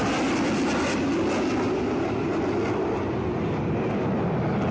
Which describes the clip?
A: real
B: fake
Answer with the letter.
A